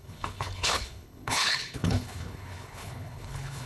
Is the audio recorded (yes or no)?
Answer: no